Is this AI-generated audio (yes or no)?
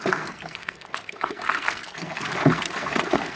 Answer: yes